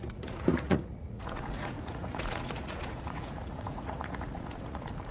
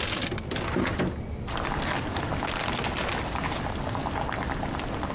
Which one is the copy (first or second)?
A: first